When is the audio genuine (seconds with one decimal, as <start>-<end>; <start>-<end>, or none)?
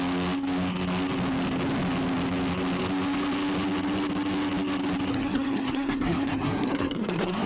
0.0-5.1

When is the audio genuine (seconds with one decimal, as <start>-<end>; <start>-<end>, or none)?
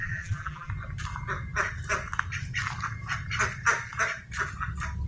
0.7-5.1